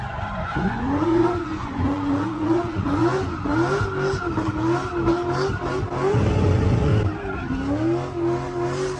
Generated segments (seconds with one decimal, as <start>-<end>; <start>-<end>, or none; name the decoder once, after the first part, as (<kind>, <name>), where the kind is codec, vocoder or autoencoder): 0.0-3.5 (vocoder, Vocos); 6.1-6.9